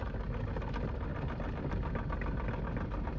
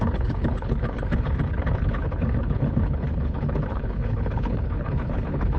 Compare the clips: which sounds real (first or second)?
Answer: first